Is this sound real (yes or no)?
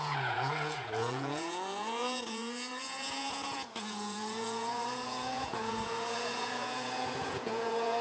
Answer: no